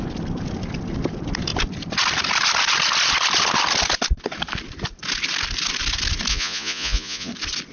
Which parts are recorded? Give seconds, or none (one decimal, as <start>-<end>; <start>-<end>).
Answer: 0.0-6.3; 7.3-7.7

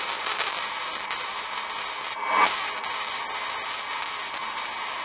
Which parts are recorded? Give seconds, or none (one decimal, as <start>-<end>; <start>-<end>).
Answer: 0.0-5.0

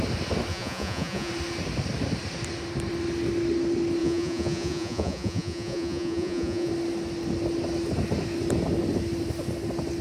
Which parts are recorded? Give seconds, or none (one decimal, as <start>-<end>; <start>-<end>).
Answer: 0.0-0.5; 1.3-4.0; 6.7-10.0

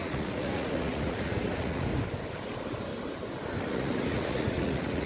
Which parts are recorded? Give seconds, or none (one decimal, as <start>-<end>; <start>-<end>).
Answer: 1.9-3.6

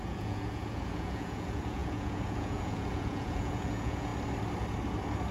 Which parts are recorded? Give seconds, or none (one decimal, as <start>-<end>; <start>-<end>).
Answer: 4.1-5.3